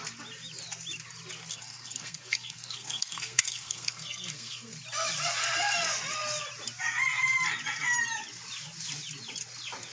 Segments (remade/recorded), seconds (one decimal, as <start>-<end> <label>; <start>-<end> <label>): 0.0-1.5 recorded; 1.5-4.7 remade; 4.7-9.9 recorded